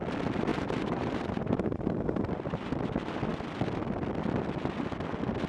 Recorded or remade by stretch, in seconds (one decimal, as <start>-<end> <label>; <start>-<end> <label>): 0.0-0.5 recorded; 0.5-2.3 remade; 2.3-5.5 recorded